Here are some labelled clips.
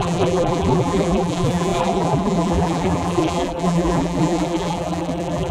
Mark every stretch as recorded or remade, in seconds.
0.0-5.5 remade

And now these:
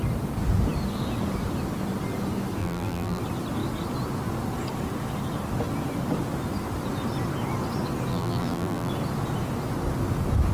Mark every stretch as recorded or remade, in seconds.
0.0-2.6 recorded; 2.6-3.2 remade; 3.2-8.1 recorded; 8.1-8.9 remade; 8.9-10.5 recorded

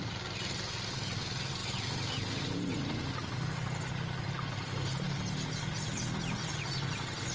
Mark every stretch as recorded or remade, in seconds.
0.0-7.3 recorded

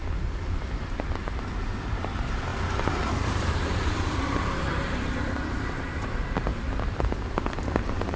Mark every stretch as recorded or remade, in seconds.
0.0-1.9 recorded; 1.9-6.5 remade; 6.5-7.7 recorded; 7.7-8.2 remade

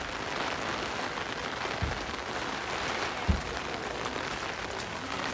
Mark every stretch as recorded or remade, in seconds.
0.0-1.4 recorded; 1.4-4.6 remade; 4.6-5.3 recorded